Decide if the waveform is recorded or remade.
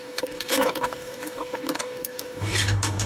remade